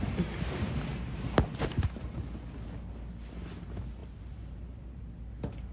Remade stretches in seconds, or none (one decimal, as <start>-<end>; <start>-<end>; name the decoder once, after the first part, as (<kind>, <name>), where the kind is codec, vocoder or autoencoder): 0.9-2.2 (vocoder, BigVGAN v2); 4.0-5.0